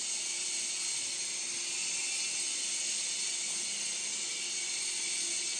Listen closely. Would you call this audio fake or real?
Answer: real